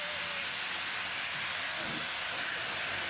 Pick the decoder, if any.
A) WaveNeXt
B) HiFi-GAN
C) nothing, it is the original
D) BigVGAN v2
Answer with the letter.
C